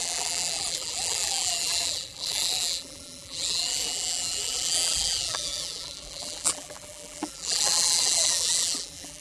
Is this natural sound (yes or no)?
no